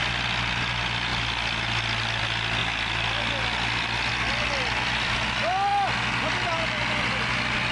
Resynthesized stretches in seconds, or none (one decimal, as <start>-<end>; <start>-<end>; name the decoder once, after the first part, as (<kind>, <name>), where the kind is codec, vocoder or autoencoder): none